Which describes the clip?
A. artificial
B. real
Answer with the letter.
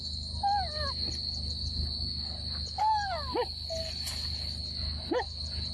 B